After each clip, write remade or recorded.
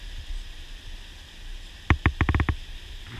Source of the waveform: recorded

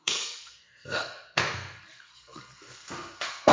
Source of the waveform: remade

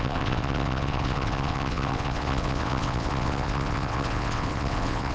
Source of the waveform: remade